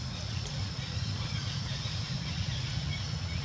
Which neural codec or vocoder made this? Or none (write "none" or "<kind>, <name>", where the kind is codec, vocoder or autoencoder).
vocoder, Vocos